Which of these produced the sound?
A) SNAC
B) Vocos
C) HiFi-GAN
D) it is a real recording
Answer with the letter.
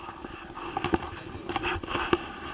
D